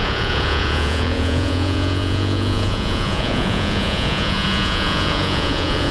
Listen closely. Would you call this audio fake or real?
fake